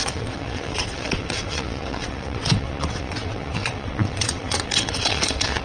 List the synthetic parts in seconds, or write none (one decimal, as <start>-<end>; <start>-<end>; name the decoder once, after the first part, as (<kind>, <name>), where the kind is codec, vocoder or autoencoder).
0.0-5.6 (vocoder, WaveNeXt)